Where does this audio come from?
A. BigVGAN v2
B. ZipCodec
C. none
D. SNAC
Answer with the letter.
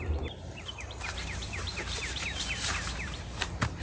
A